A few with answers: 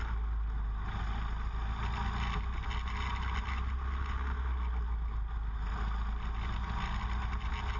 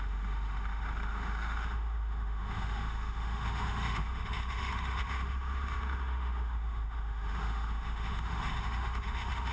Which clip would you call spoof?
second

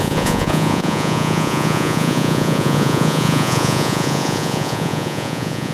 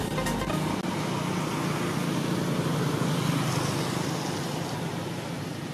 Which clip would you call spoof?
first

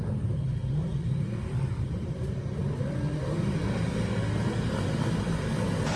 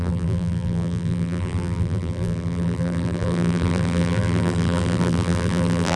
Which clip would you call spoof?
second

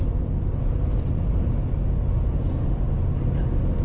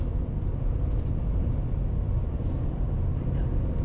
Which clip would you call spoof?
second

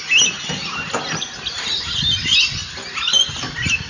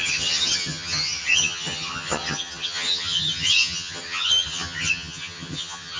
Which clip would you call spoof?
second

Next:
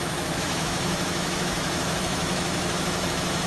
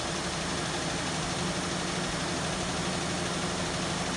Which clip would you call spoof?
first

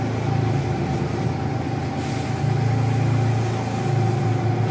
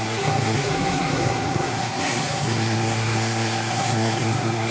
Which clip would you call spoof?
second